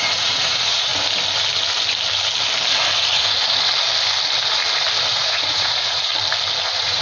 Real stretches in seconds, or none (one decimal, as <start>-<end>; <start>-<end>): 0.9-5.1; 6.1-6.6